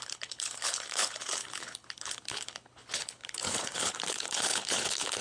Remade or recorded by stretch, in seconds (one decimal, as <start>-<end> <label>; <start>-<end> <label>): 0.0-5.2 remade